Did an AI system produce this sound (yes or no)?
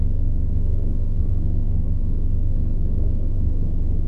yes